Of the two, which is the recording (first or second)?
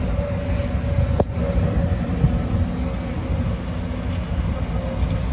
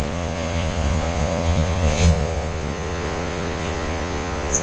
first